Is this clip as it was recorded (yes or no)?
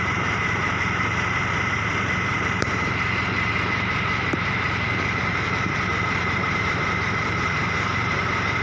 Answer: no